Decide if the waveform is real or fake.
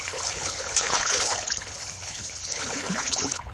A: fake